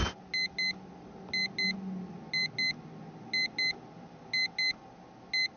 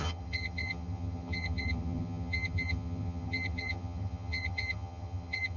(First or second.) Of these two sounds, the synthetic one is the second